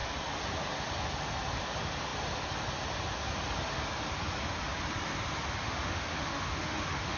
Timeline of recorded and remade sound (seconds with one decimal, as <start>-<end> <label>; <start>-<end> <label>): 0.0-5.6 recorded; 5.6-7.2 remade